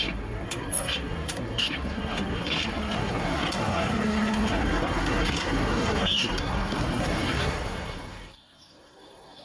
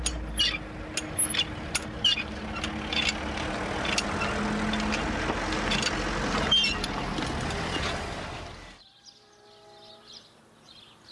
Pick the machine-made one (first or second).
first